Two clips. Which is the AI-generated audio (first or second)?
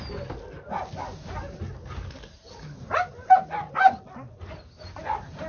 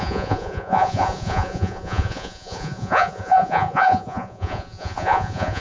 second